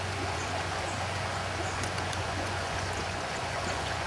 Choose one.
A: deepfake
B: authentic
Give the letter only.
A